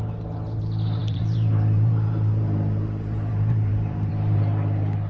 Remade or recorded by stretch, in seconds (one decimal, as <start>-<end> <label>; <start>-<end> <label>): 0.0-1.0 recorded; 1.0-4.1 remade; 4.1-5.1 recorded